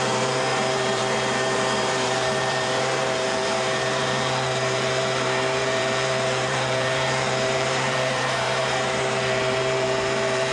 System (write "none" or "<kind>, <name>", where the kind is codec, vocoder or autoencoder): vocoder, BigVGAN v2